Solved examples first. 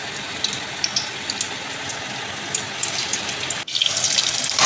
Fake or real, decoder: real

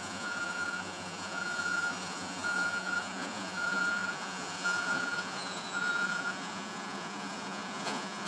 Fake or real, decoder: fake, vocoder, Vocos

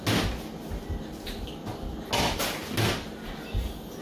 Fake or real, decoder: real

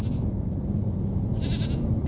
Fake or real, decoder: real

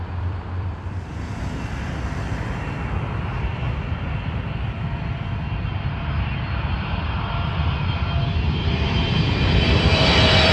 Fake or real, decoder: fake, vocoder, BigVGAN v2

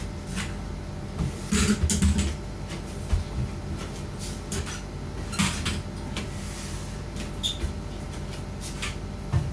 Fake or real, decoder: real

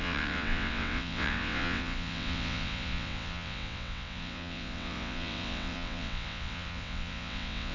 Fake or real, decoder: fake, vocoder, WaveNeXt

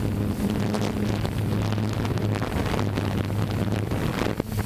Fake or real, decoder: real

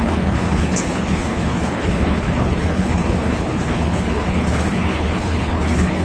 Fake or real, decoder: fake, codec, HILCodec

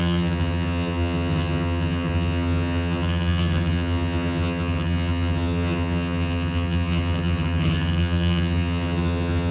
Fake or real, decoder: fake, vocoder, HiFi-GAN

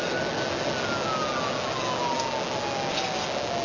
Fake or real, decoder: real